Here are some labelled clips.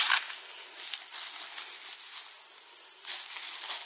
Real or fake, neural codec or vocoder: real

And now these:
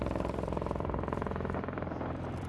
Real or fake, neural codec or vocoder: fake, vocoder, BigVGAN v2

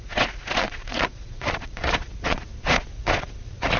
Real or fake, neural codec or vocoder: fake, vocoder, Vocos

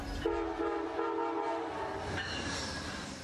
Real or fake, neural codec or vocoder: real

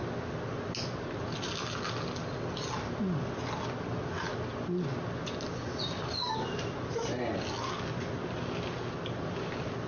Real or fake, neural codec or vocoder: real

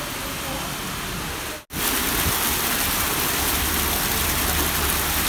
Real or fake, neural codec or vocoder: real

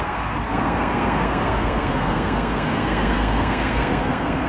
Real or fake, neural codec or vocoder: fake, codec, SNAC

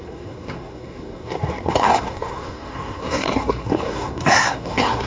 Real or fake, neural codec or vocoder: fake, codec, SNAC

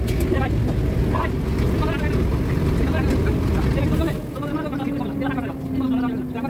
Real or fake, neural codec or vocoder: real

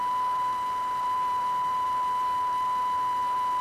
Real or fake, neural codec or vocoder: fake, vocoder, BigVGAN v2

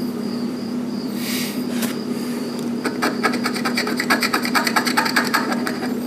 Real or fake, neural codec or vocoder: fake, vocoder, BigVGAN v2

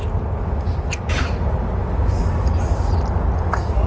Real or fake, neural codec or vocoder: real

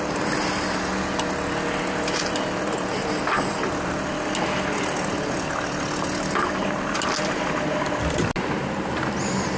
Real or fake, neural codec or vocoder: real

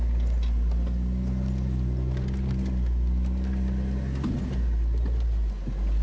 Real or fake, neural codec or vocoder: real